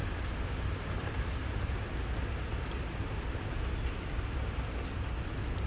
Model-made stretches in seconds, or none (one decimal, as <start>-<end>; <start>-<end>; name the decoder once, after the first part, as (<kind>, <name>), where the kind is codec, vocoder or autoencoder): none